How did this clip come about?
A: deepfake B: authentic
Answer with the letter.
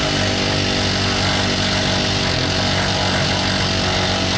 B